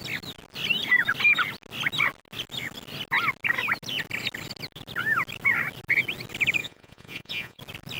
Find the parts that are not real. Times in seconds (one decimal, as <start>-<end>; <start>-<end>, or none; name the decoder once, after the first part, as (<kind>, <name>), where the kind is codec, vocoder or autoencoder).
6.6-7.6 (vocoder, Vocos)

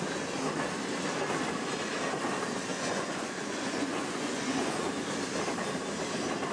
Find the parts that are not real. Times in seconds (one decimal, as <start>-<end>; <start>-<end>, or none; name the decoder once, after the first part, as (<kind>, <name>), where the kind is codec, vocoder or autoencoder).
2.7-4.9 (vocoder, Vocos)

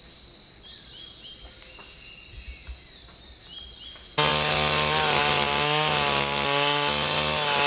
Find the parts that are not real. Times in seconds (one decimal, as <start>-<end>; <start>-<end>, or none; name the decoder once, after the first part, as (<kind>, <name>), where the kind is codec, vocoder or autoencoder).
none

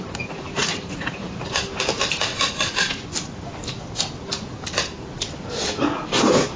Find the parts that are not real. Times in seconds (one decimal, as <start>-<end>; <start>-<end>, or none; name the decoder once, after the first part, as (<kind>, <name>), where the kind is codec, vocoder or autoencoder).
0.6-1.5 (vocoder, Vocos)

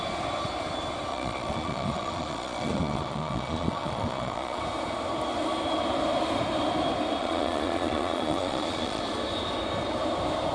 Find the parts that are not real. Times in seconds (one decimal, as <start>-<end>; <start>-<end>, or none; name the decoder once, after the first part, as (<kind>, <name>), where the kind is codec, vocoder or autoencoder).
1.1-4.6 (vocoder, Vocos); 7.2-9.0

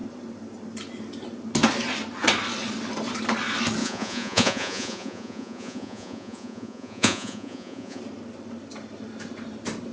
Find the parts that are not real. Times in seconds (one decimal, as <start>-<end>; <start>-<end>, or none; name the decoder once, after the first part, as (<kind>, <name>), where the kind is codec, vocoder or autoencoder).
3.8-8.0 (vocoder, Vocos)

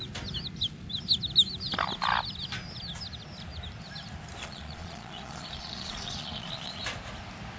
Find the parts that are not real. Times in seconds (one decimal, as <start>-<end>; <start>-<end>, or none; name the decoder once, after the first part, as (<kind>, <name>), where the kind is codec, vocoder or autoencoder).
4.4-6.8 (vocoder, Vocos)

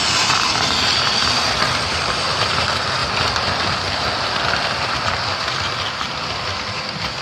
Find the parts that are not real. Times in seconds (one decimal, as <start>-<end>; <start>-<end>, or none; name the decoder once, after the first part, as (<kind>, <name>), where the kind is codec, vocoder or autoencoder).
none